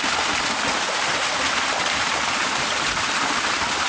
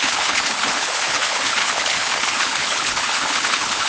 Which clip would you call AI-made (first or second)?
second